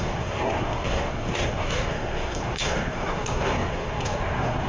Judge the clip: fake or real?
fake